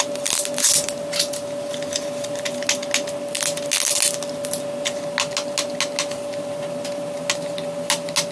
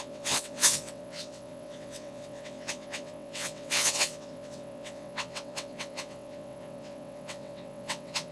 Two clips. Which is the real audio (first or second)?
first